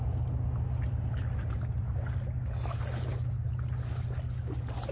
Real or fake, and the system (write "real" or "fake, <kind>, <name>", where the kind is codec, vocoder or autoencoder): real